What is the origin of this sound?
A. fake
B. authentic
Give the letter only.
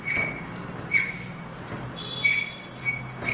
A